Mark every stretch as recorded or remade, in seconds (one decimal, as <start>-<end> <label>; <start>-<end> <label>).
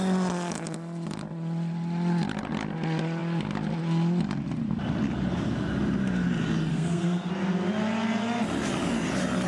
0.0-6.7 recorded; 6.7-7.3 remade; 7.3-9.5 recorded